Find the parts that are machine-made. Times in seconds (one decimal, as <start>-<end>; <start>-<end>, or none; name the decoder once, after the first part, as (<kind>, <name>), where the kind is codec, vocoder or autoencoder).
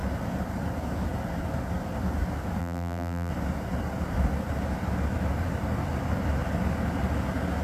2.6-3.3 (vocoder, BigVGAN v2)